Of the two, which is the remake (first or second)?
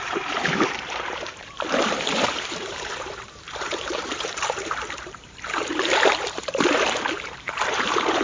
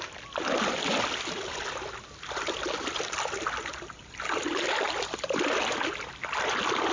first